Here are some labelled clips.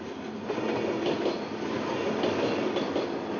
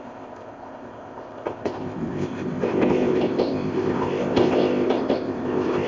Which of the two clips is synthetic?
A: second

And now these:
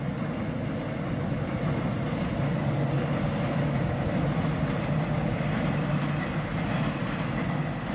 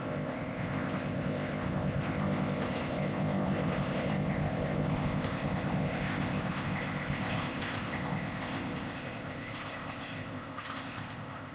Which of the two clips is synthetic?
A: second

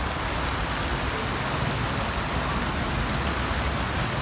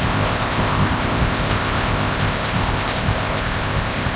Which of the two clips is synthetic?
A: second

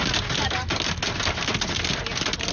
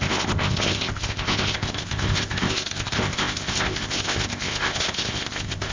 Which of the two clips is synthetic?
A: second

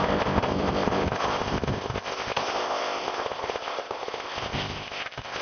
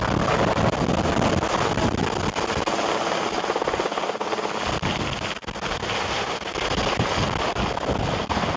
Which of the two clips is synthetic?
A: first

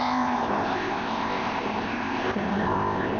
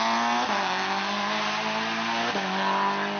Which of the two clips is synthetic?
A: first